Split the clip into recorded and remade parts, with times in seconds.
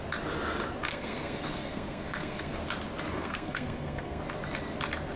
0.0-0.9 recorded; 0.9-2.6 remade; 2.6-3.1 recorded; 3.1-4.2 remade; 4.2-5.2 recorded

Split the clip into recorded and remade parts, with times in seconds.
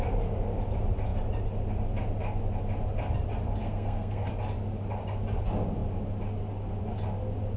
0.0-3.6 recorded; 3.6-4.3 remade; 4.3-7.6 recorded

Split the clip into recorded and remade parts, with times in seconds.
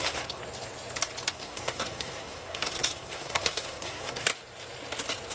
0.0-0.4 remade; 0.4-1.3 recorded; 1.3-4.3 remade; 4.3-5.3 recorded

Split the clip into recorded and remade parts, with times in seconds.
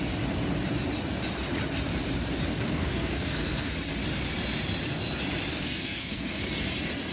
0.0-2.5 recorded; 2.5-3.7 remade; 3.7-5.5 recorded; 5.5-6.5 remade; 6.5-7.1 recorded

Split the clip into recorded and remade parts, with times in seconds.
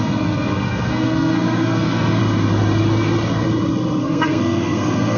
0.0-2.2 remade; 2.2-4.0 recorded; 4.0-5.2 remade